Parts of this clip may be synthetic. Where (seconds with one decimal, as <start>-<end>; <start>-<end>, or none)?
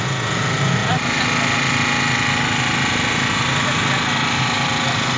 none